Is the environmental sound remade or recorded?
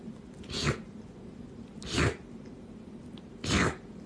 recorded